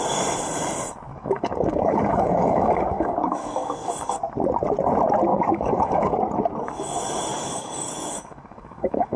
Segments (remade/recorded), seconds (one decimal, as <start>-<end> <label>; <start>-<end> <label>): 0.0-1.1 recorded; 1.1-3.9 remade; 3.9-5.3 recorded; 5.3-6.2 remade; 6.2-7.3 recorded; 7.3-9.2 remade